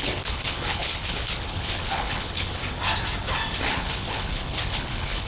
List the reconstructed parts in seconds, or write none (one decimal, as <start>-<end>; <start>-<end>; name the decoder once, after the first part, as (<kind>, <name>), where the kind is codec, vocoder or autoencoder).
0.0-2.6 (codec, HILCodec); 3.7-5.3